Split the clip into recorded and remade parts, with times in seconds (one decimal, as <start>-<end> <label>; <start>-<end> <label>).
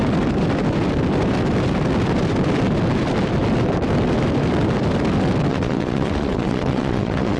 0.0-5.5 recorded; 5.5-7.4 remade